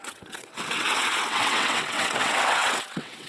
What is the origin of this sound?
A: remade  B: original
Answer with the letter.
A